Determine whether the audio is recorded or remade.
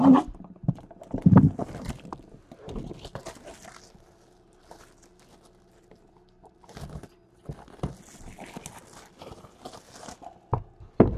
recorded